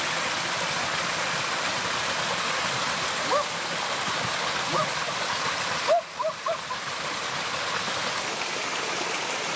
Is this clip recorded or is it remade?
recorded